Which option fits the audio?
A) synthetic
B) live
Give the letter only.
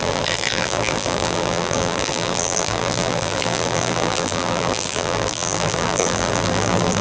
A